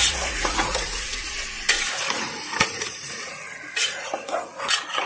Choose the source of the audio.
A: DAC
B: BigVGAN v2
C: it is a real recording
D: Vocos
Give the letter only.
D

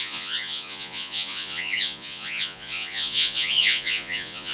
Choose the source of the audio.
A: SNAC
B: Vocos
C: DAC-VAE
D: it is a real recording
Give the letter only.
B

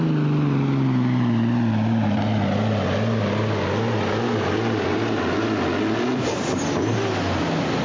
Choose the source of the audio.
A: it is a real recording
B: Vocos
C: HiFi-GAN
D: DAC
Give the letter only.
A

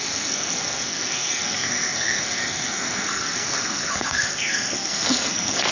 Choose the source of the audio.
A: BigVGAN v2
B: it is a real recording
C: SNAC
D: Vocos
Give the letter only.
C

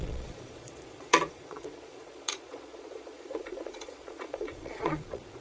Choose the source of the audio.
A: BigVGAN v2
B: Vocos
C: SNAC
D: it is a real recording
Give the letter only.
B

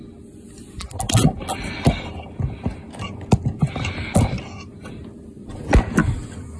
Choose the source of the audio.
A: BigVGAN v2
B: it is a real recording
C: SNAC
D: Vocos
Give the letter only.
B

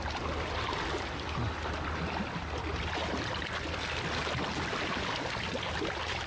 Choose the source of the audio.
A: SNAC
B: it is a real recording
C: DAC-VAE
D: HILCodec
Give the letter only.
B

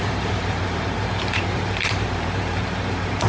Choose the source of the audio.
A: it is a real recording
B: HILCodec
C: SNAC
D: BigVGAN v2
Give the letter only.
D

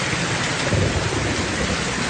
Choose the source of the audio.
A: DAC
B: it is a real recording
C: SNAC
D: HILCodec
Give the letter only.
B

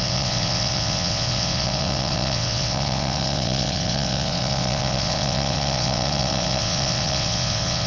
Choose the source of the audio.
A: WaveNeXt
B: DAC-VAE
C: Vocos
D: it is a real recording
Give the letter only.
A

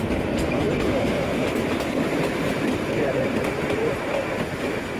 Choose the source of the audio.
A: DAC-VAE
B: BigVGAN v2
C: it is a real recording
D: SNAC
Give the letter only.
C